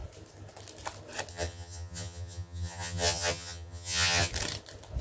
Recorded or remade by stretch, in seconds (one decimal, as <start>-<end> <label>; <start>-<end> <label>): 0.0-1.3 recorded; 1.3-4.3 remade; 4.3-5.0 recorded